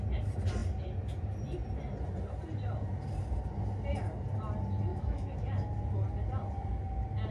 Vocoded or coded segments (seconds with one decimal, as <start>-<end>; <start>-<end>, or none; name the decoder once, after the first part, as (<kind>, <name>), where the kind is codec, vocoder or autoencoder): 4.9-5.4 (autoencoder, DAC-VAE)